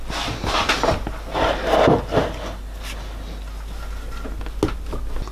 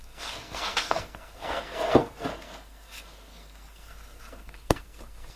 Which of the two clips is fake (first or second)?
second